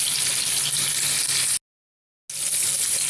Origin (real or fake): real